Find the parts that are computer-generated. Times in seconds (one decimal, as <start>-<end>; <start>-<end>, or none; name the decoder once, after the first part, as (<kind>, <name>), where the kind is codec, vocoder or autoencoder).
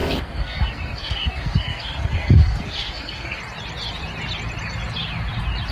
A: 0.0-3.4 (codec, SNAC)